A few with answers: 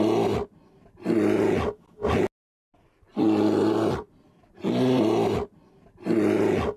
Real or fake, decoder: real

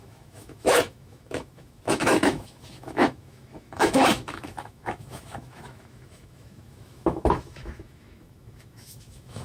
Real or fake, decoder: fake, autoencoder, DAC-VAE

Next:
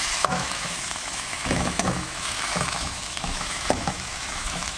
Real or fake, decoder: fake, autoencoder, DAC-VAE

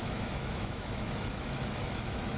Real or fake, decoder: fake, autoencoder, DAC-VAE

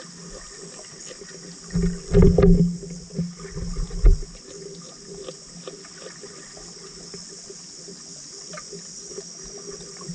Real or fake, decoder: real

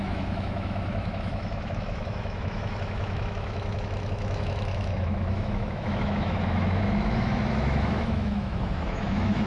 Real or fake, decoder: fake, autoencoder, DAC-VAE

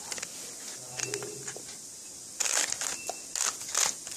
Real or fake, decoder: real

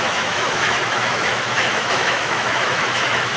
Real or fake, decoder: fake, autoencoder, DAC-VAE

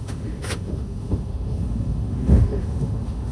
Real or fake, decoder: fake, autoencoder, DAC-VAE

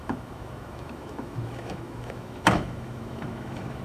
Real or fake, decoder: fake, autoencoder, DAC-VAE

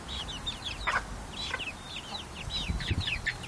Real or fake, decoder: real